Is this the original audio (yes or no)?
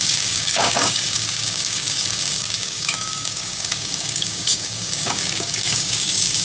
no